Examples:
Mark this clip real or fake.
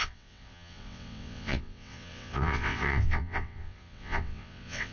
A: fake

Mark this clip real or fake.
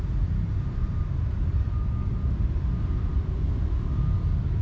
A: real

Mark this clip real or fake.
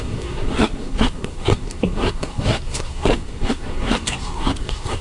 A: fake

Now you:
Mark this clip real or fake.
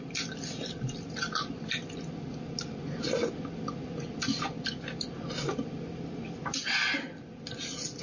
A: real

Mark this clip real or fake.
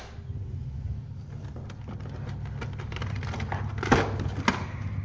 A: real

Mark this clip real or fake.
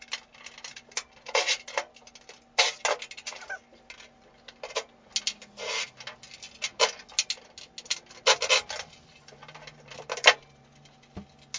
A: real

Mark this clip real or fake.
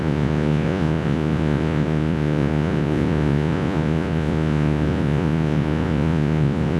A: fake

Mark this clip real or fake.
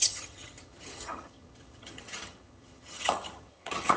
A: fake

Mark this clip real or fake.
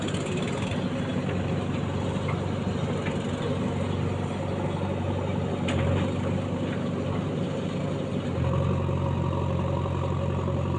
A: real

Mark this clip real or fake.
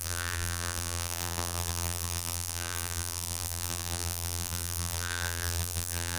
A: fake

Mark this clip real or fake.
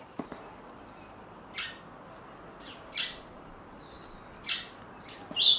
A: real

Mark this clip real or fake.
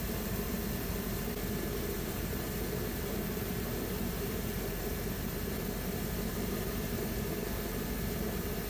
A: fake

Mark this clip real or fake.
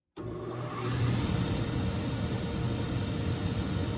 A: real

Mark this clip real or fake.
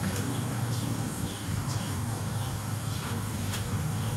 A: fake